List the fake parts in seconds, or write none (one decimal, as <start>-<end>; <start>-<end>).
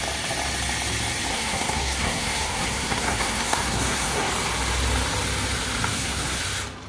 1.3-4.3; 5.9-6.4